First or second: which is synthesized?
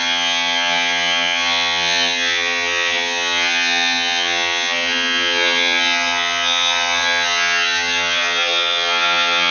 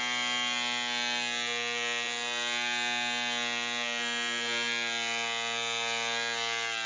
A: first